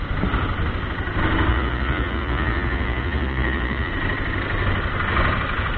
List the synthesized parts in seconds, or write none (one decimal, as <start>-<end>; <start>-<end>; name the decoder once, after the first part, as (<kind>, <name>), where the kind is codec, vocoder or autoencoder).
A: 1.5-3.9 (vocoder, Vocos)